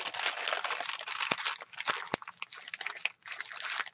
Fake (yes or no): no